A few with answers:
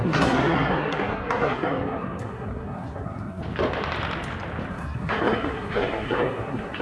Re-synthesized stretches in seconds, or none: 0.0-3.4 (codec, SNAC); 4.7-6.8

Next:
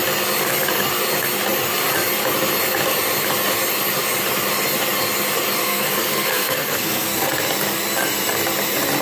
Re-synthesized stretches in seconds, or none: 5.6-7.3 (codec, SNAC)

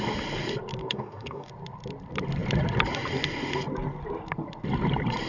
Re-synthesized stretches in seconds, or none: 0.8-1.5 (codec, DAC)

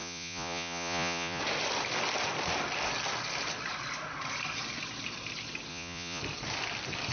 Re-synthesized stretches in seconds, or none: 0.0-1.4 (vocoder, Vocos); 5.7-6.2

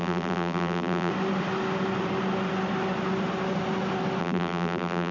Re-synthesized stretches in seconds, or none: 0.0-1.1 (vocoder, BigVGAN v2); 4.2-5.1

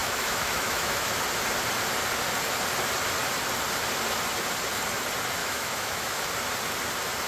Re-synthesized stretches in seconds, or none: 0.0-1.2 (autoencoder, DAC-VAE); 5.4-6.2

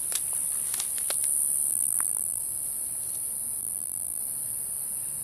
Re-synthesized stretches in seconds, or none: 1.7-2.4 (vocoder, BigVGAN v2); 3.6-4.2